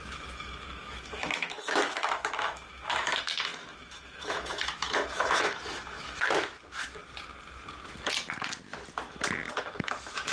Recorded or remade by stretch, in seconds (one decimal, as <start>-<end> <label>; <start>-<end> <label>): 0.0-7.0 remade; 7.0-9.6 recorded; 9.6-10.3 remade